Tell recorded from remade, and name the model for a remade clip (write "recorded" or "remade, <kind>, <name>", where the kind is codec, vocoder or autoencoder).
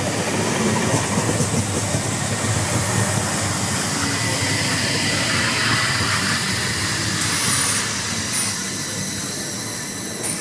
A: recorded